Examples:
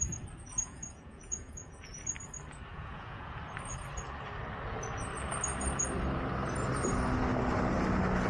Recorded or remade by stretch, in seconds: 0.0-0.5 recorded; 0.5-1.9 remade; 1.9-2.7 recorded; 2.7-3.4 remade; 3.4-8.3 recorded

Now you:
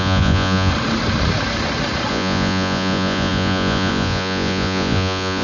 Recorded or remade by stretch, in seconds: 0.0-0.7 remade; 0.7-2.1 recorded; 2.1-5.4 remade

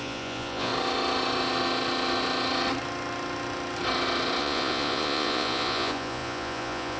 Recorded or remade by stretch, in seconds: 0.0-0.7 remade; 0.7-4.4 recorded; 4.4-7.0 remade

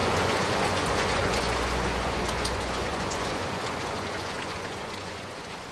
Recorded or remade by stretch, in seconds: 0.0-5.7 remade

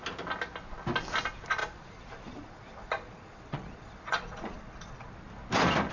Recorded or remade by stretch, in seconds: 0.0-1.6 recorded; 1.6-5.1 remade; 5.1-5.9 recorded

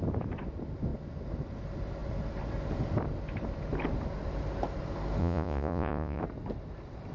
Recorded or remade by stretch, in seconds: 0.0-5.2 recorded; 5.2-6.2 remade; 6.2-7.1 recorded